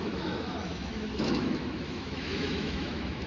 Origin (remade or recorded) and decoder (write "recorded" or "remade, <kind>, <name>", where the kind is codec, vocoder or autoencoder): remade, autoencoder, DAC-VAE